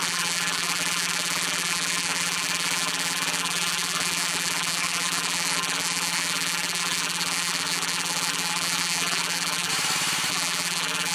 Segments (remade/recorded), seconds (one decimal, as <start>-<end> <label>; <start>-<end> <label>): 0.0-9.7 remade; 9.7-10.3 recorded; 10.3-11.1 remade